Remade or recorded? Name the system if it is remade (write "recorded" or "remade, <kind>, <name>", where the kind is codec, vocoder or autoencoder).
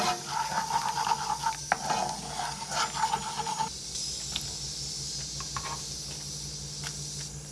recorded